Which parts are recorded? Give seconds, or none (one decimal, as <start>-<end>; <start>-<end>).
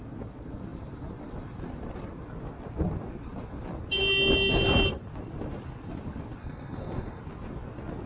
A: 0.0-6.4; 7.2-8.1